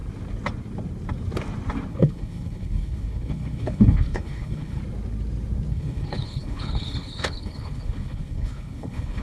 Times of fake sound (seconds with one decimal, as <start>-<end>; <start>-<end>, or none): 1.9-4.8; 5.7-9.2